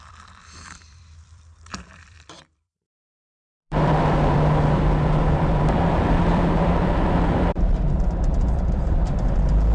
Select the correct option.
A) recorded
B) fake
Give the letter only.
B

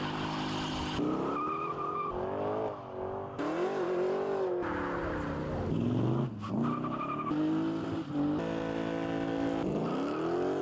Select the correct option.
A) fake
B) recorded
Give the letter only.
B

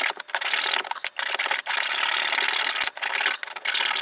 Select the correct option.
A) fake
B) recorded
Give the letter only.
B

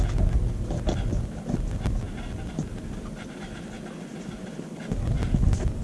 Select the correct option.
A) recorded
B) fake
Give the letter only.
A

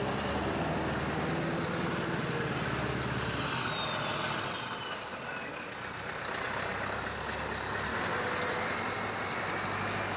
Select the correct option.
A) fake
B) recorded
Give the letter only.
B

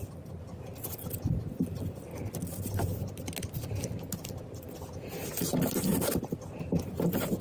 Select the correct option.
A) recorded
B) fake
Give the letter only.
A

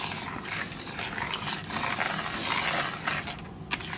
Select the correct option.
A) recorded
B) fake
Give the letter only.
A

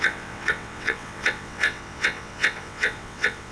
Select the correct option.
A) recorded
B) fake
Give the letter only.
B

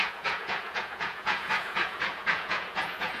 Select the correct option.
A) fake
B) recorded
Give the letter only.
A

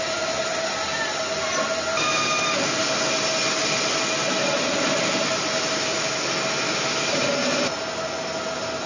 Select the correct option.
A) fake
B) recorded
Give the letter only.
B